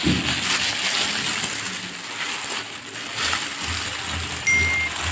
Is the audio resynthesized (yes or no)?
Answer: no